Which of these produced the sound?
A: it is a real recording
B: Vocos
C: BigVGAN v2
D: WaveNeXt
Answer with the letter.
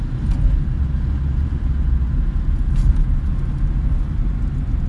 A